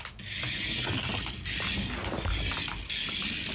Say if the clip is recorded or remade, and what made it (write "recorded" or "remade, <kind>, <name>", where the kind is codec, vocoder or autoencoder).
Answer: recorded